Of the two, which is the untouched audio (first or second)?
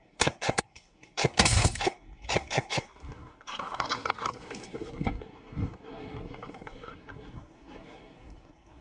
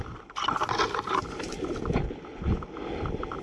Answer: second